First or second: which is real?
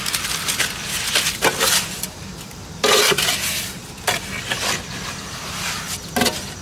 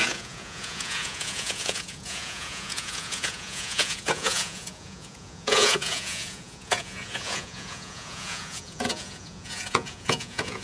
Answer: first